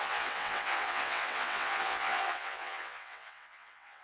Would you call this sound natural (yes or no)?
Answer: no